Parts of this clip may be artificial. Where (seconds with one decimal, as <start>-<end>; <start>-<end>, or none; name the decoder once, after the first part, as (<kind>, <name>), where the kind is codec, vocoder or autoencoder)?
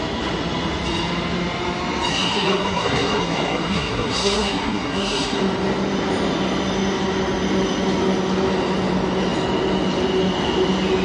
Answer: 2.1-5.4 (codec, SNAC)